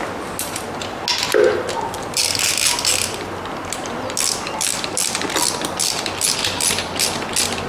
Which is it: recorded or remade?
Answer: recorded